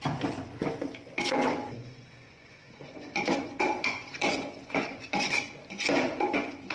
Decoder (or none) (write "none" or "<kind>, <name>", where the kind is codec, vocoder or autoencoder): vocoder, Vocos